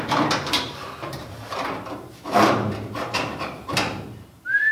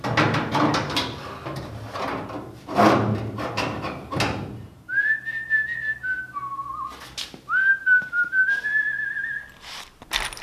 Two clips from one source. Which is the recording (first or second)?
second